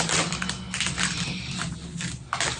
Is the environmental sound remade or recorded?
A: recorded